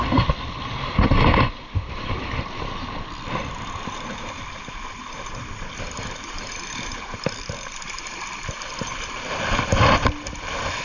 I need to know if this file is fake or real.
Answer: real